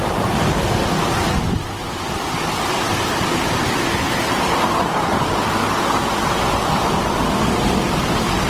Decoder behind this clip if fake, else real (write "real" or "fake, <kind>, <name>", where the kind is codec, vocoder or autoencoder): real